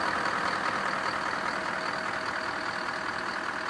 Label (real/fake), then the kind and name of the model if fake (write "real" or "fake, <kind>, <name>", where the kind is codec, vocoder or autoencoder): real